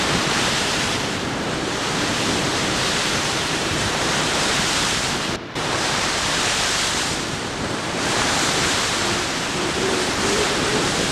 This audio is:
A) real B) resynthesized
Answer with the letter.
B